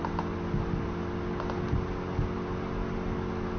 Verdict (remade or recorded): recorded